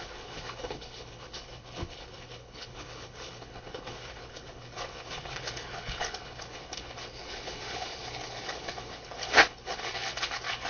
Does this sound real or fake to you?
fake